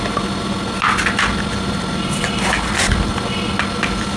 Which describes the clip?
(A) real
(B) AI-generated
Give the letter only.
A